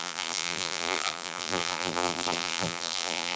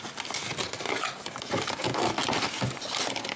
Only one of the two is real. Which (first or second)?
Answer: second